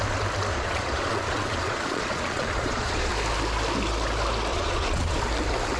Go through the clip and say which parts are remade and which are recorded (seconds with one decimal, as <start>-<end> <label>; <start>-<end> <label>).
0.0-0.5 recorded; 0.5-3.1 remade; 3.1-4.5 recorded; 4.5-5.2 remade; 5.2-5.8 recorded